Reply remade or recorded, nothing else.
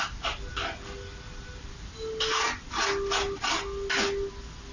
recorded